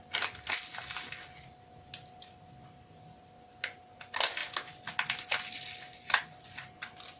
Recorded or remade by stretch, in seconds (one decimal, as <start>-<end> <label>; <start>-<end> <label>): 0.0-7.2 recorded